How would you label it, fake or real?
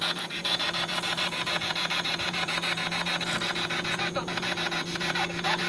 fake